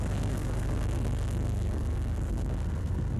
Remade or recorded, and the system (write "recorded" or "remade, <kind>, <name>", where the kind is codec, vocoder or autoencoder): remade, codec, SNAC